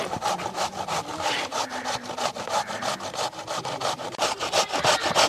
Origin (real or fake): real